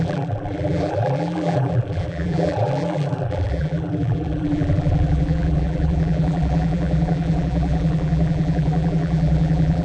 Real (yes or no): no